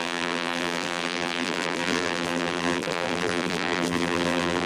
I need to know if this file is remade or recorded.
remade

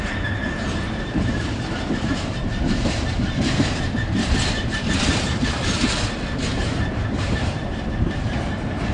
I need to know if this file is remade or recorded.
remade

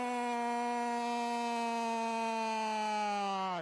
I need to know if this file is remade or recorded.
recorded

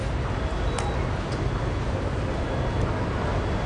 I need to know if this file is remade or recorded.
recorded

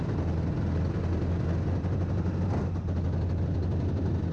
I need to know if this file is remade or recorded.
recorded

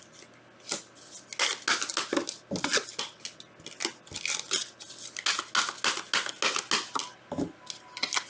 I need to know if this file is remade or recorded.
recorded